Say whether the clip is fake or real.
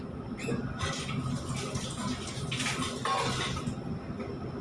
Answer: real